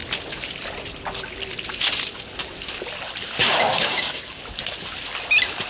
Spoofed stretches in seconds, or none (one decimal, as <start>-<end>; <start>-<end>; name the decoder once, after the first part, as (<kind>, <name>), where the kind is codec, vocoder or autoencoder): 3.4-4.4 (codec, DAC)